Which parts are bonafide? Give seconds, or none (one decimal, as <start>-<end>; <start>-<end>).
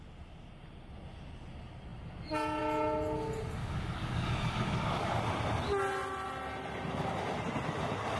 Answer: 0.0-3.6; 5.2-8.2